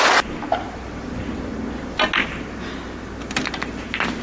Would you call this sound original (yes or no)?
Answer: yes